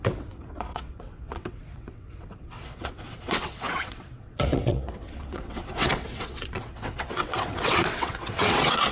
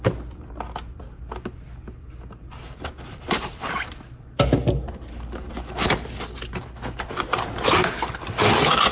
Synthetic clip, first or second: first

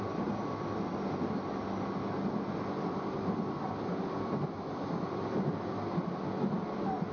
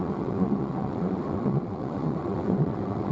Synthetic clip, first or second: second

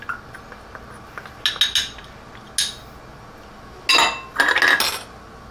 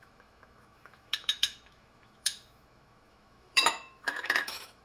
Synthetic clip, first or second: second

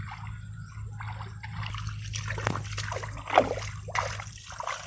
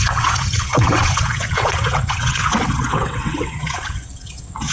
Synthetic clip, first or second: second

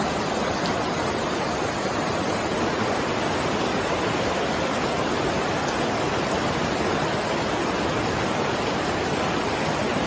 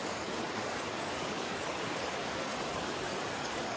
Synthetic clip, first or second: second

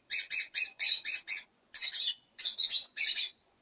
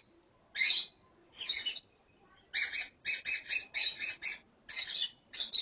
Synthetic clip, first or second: first